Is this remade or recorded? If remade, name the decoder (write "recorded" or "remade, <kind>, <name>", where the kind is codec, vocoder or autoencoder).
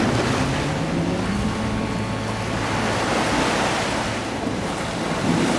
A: recorded